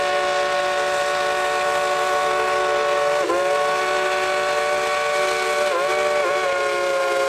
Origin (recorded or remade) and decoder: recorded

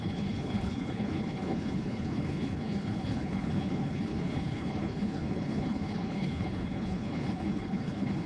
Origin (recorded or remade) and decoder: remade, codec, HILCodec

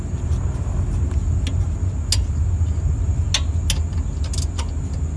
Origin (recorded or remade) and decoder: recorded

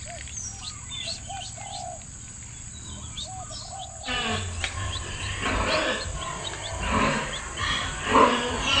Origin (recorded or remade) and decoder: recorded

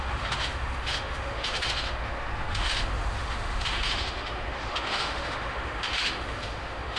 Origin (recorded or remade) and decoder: remade, autoencoder, DAC-VAE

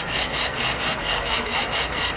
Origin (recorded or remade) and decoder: remade, codec, SNAC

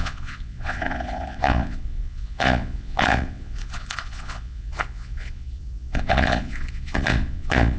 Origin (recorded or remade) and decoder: remade, vocoder, Vocos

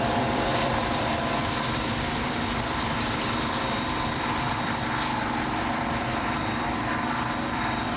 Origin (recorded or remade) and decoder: remade, vocoder, BigVGAN v2